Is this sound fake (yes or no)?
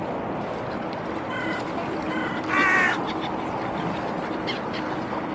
no